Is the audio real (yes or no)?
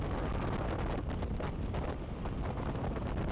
yes